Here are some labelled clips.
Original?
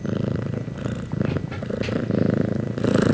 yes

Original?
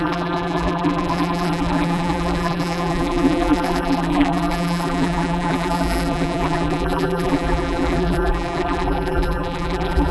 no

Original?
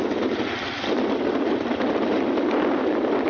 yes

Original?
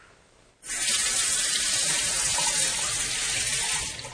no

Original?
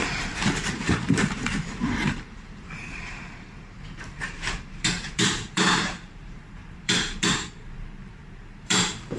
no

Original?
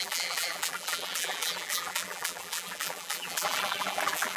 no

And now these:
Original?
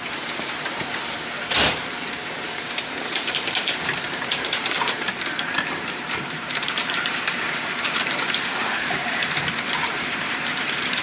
no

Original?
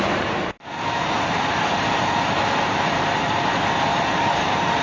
no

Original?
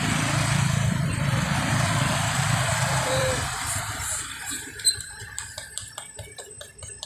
no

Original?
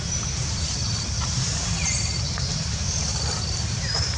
no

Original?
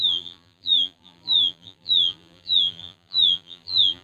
no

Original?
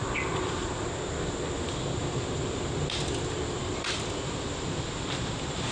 no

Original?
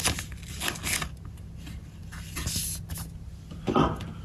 yes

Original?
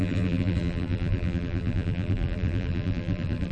no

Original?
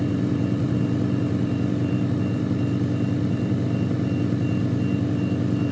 yes